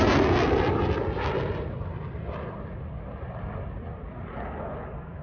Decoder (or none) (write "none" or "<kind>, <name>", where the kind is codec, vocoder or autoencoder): none